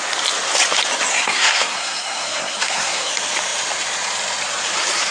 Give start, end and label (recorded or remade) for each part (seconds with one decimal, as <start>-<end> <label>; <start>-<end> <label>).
0.0-1.1 recorded; 1.1-3.1 remade; 3.1-5.1 recorded